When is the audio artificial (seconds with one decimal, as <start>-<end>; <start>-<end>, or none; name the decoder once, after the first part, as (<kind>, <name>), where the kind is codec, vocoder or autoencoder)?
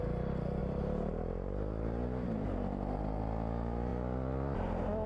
0.6-3.2 (vocoder, BigVGAN v2)